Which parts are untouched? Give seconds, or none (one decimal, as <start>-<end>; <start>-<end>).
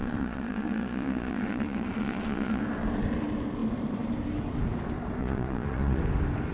2.6-5.2; 6.0-6.5